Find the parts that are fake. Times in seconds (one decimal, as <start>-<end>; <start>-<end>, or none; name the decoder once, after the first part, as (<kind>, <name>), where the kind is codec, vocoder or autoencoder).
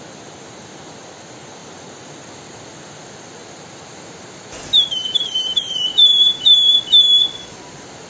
1.6-2.1 (vocoder, BigVGAN v2); 3.4-6.8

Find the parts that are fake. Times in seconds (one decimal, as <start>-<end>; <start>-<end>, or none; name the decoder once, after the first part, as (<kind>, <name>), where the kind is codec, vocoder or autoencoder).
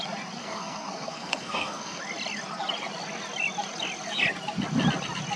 0.4-2.0 (codec, SNAC)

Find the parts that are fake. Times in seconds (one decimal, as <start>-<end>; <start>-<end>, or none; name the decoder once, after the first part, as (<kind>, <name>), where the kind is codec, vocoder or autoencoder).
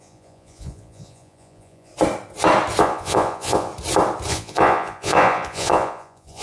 0.0-1.9 (vocoder, Vocos); 2.8-3.7; 4.3-6.4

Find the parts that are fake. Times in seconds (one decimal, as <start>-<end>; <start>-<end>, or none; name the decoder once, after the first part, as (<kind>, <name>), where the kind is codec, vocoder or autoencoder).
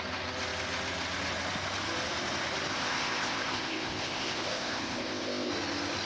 2.7-5.5 (codec, ZipCodec)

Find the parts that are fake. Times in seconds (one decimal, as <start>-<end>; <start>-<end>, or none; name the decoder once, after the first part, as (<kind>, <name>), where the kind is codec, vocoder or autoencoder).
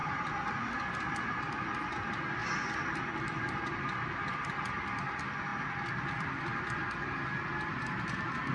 none